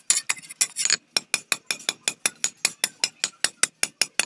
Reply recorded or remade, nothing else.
recorded